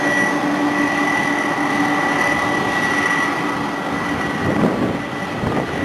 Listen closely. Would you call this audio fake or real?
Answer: real